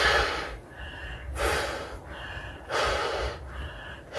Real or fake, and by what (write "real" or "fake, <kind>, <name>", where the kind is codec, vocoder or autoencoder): real